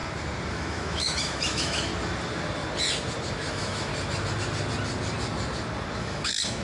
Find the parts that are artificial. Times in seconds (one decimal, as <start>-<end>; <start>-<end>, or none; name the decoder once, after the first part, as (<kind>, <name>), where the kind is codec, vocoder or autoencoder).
0.5-1.9 (autoencoder, DAC-VAE); 3.5-3.9; 6.0-6.6